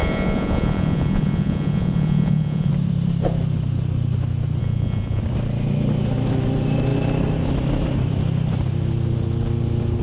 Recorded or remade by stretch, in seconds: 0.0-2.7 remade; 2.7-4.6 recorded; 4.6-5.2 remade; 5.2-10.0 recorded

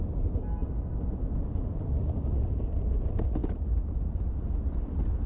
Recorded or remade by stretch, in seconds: 0.0-3.4 recorded; 3.4-5.3 remade

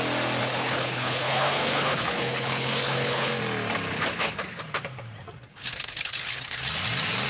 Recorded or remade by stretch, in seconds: 0.0-0.4 recorded; 0.4-3.3 remade; 3.3-3.9 recorded; 3.9-4.6 remade; 4.6-5.5 recorded; 5.5-6.6 remade; 6.6-7.3 recorded

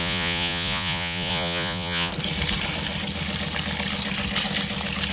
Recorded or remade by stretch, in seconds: 0.0-2.1 remade; 2.1-5.1 recorded

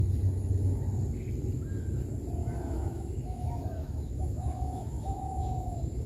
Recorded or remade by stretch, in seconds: 0.0-2.4 recorded; 2.4-6.1 remade

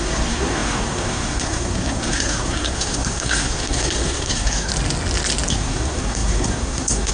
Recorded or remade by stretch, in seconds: 0.0-4.7 remade; 4.7-5.5 recorded; 5.5-7.1 remade